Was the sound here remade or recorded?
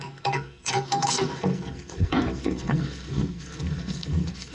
remade